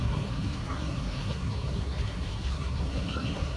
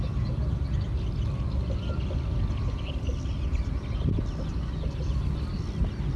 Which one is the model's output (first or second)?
first